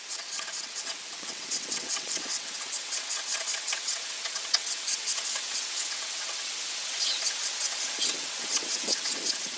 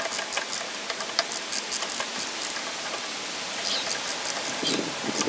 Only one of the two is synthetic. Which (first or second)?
first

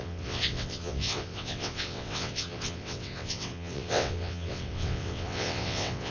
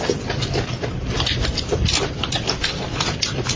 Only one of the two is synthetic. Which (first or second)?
first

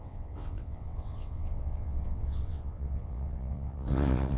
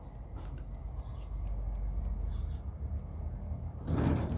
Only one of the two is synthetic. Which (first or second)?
first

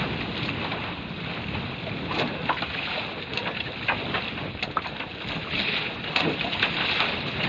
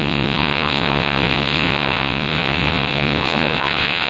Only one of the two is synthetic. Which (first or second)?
second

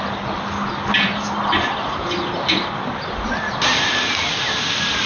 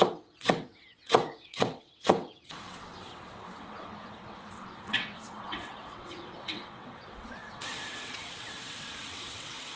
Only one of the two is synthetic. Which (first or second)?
second